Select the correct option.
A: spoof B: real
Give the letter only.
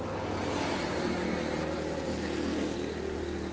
B